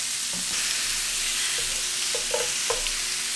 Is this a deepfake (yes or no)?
no